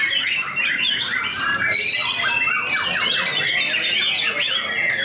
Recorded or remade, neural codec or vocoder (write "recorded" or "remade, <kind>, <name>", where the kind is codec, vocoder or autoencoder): recorded